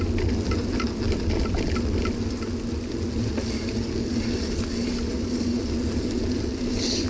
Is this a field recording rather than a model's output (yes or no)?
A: yes